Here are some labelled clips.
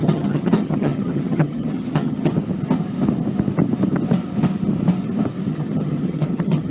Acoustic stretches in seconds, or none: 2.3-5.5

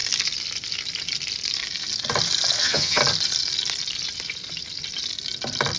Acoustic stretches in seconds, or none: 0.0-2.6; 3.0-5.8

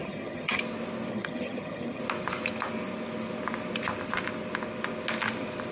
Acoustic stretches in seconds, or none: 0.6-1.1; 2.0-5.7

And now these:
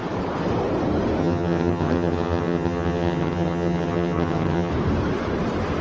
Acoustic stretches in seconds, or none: 0.0-1.2; 4.7-5.8

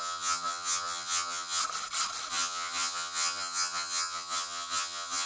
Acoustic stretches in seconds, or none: 1.6-2.3

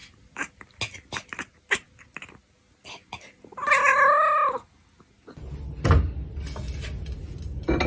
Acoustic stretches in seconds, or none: 0.0-7.9

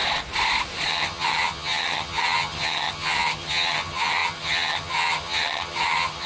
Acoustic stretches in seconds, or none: 0.0-0.9